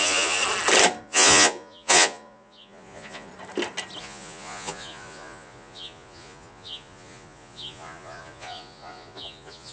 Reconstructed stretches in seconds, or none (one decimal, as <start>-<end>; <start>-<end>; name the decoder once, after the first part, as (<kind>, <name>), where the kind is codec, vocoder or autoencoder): 0.0-0.4 (vocoder, Vocos); 1.0-3.3; 4.0-9.7